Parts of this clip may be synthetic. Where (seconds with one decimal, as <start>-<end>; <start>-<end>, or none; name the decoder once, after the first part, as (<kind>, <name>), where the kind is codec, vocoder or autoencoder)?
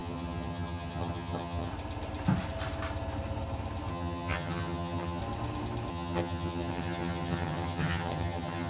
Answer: 0.0-1.7 (vocoder, HiFi-GAN); 3.9-5.2; 5.9-8.7